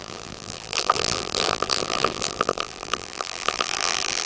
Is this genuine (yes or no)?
no